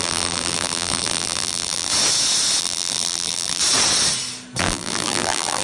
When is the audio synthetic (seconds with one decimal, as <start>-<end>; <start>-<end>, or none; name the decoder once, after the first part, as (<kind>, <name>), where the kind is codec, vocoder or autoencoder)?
0.0-1.9 (vocoder, BigVGAN v2); 2.6-3.6; 4.6-5.6